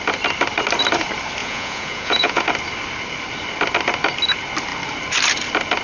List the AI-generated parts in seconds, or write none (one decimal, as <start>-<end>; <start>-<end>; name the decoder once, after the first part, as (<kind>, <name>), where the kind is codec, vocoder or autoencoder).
1.4-2.4 (vocoder, Vocos)